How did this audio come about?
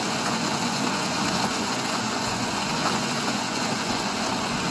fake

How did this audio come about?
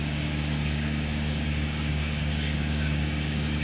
fake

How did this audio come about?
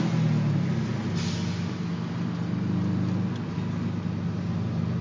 real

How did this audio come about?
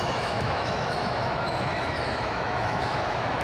fake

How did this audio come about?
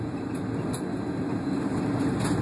real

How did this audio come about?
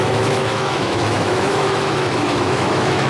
fake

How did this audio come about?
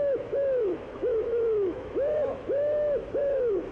fake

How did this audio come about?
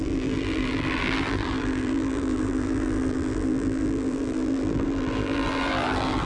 fake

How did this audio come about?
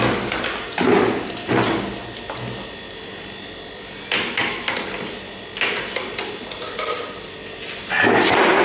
real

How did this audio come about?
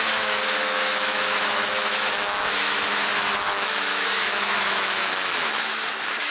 fake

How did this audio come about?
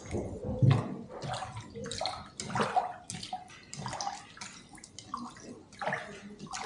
real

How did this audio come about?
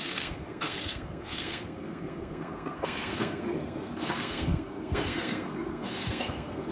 fake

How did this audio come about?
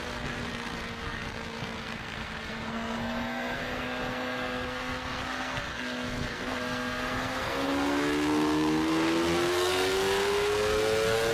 fake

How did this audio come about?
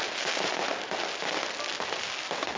real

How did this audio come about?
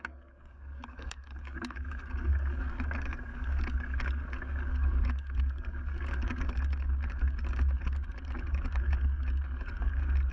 fake